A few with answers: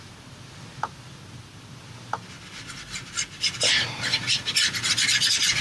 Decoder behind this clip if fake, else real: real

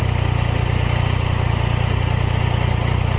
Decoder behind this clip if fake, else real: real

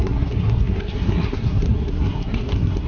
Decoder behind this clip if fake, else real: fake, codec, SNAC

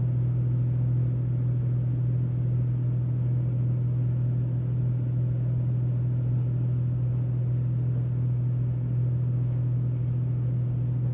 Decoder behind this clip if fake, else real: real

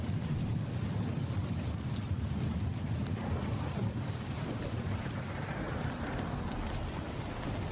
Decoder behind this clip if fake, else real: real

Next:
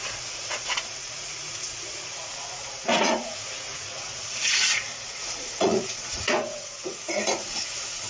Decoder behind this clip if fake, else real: fake, vocoder, Vocos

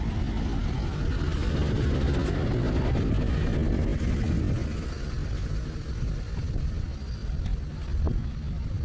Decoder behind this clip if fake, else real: real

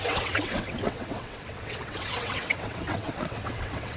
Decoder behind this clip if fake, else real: fake, vocoder, WaveNeXt